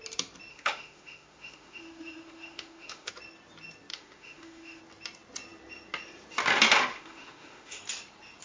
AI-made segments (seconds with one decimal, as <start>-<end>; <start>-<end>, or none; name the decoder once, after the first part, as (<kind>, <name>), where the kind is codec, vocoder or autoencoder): 0.5-3.1 (autoencoder, DAC-VAE); 3.9-4.8; 6.9-7.8